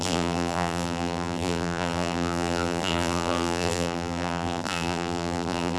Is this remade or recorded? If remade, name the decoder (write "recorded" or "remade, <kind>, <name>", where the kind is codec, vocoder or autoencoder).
remade, vocoder, BigVGAN v2